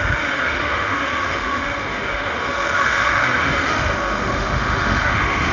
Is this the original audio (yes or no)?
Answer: no